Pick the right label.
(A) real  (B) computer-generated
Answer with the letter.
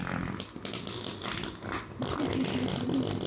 A